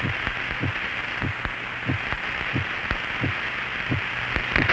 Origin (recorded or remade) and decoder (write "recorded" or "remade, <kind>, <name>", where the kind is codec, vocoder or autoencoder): recorded